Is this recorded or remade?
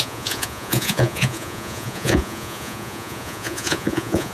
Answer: remade